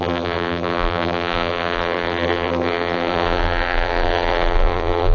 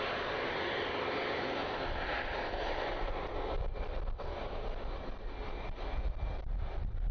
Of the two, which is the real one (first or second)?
second